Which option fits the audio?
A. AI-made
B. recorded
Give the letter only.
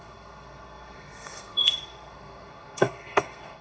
A